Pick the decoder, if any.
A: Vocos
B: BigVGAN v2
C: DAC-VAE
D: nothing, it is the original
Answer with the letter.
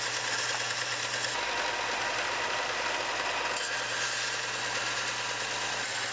D